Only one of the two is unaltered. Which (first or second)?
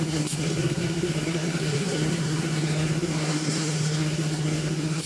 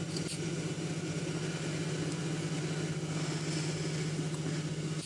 second